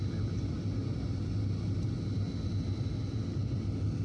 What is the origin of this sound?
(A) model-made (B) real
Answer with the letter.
B